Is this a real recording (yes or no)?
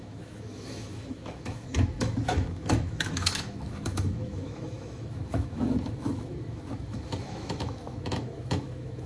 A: no